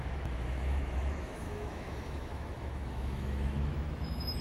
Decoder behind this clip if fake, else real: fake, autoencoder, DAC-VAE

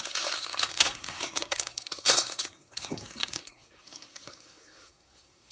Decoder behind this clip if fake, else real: fake, codec, SNAC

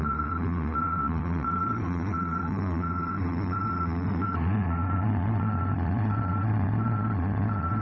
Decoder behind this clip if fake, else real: fake, vocoder, Vocos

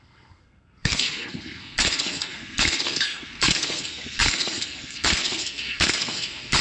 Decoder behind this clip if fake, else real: fake, codec, SNAC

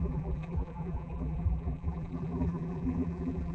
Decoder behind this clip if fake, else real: fake, vocoder, BigVGAN v2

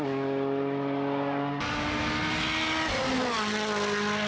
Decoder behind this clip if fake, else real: real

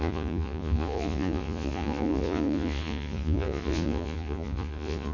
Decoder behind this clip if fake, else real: fake, vocoder, Vocos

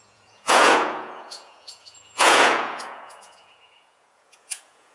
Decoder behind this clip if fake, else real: fake, vocoder, Vocos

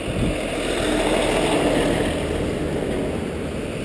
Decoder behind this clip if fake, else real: real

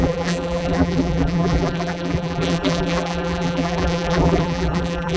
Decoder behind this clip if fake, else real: fake, vocoder, BigVGAN v2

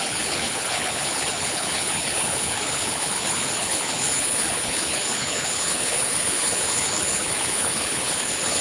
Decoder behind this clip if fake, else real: fake, codec, HILCodec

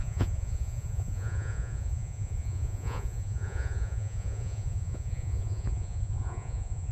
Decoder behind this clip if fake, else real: fake, vocoder, Vocos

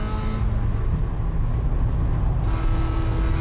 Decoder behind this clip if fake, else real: real